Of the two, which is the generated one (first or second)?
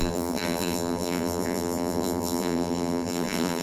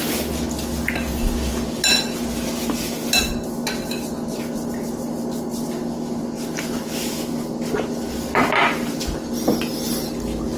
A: first